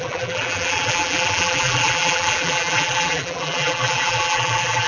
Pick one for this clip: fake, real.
fake